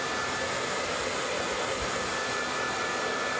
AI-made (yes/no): no